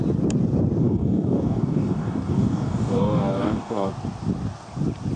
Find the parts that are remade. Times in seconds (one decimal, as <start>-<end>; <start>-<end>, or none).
0.8-3.9